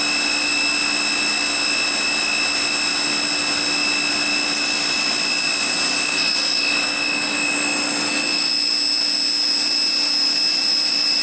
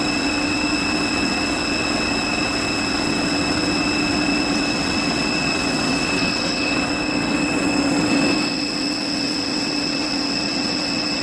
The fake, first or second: second